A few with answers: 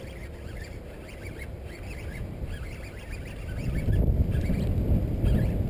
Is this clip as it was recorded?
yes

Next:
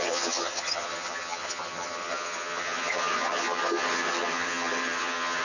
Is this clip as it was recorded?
no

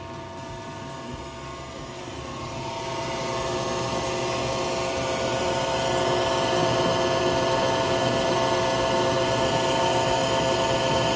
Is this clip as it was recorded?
yes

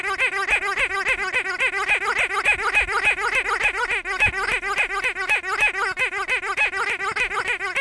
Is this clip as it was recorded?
yes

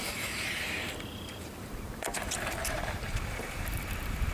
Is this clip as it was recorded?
no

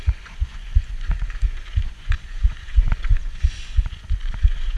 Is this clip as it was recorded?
no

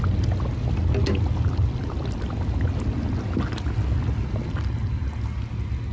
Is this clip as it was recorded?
yes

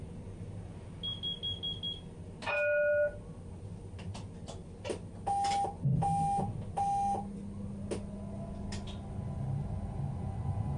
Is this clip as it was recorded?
yes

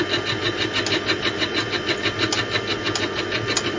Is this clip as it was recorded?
yes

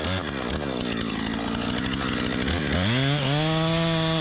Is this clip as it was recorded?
yes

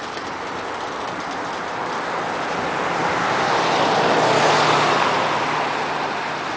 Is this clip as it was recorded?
yes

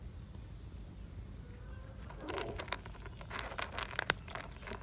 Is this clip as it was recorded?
yes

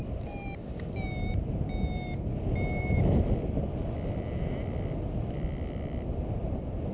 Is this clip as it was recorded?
yes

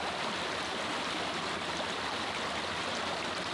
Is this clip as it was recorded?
yes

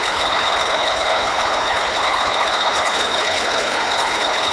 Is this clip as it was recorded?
no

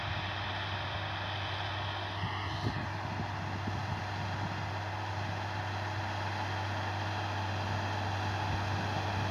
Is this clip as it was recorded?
yes